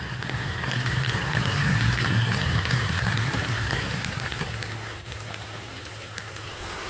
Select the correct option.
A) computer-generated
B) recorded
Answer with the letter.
A